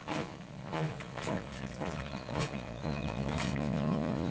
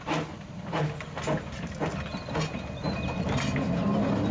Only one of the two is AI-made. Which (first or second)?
first